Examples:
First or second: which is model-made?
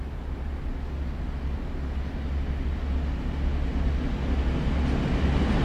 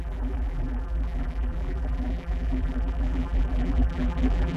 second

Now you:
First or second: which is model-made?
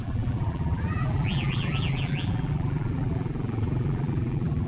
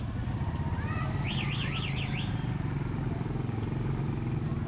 first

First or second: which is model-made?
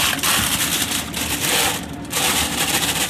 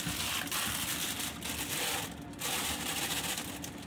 first